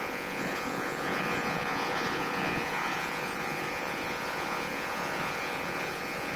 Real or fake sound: fake